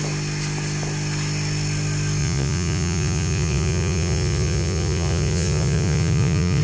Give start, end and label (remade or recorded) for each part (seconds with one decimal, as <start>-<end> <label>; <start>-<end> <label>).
0.0-2.2 recorded; 2.2-6.6 remade